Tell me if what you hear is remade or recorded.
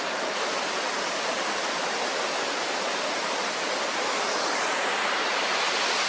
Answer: recorded